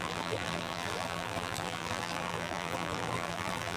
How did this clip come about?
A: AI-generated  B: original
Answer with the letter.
A